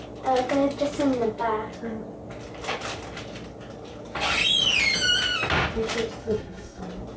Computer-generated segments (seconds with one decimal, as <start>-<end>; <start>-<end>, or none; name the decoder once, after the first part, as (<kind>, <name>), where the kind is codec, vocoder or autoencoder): 6.2-6.8 (codec, SNAC)